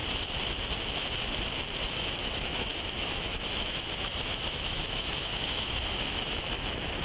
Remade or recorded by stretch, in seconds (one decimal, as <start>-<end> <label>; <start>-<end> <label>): 0.0-1.8 recorded; 1.8-7.0 remade